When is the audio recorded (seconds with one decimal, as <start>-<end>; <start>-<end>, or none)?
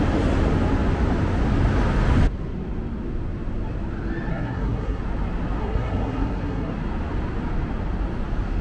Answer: 0.0-4.3; 5.0-5.6; 6.7-8.6